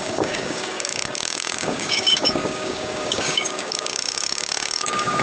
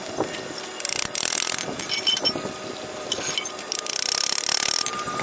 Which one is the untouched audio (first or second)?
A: second